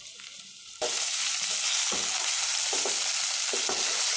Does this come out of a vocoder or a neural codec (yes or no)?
no